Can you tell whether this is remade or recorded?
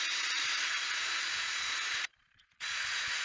remade